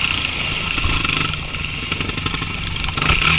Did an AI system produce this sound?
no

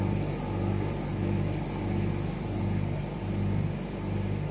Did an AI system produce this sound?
no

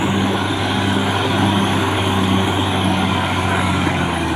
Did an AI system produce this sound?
yes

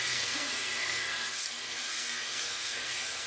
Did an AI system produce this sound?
yes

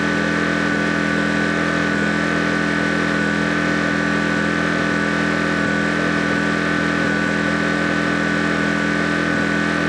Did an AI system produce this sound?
no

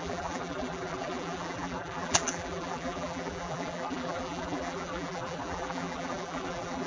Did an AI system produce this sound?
yes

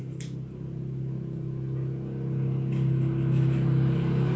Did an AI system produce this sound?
no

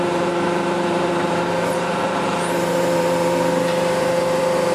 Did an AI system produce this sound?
yes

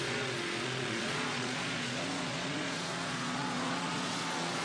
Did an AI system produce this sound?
yes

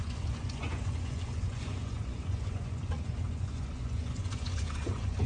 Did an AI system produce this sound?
yes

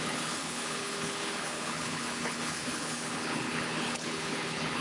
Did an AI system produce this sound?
yes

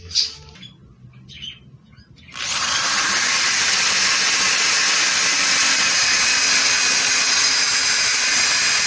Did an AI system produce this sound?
no